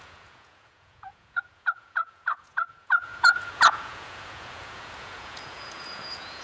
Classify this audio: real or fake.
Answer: fake